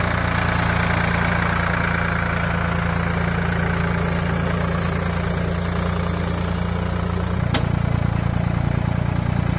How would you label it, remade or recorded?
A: recorded